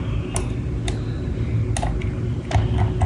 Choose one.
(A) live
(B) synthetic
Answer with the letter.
A